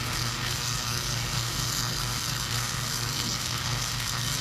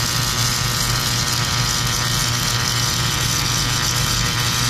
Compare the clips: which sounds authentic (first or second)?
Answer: second